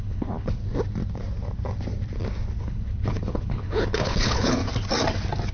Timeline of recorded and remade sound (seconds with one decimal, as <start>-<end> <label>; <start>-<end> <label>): 0.0-0.6 remade; 0.6-2.6 recorded; 2.6-4.6 remade; 4.6-5.5 recorded